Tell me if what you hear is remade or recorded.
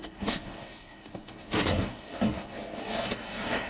remade